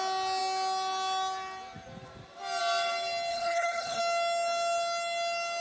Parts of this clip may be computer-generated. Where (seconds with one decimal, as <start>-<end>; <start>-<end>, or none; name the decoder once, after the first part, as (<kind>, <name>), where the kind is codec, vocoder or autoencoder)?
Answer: 3.3-4.0 (codec, HILCodec)